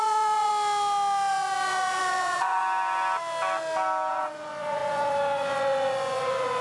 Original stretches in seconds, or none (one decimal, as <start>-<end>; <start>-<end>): 0.5-1.3; 2.6-4.1